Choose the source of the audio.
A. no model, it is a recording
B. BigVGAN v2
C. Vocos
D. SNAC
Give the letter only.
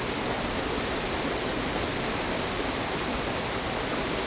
A